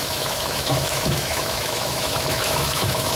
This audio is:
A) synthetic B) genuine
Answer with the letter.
A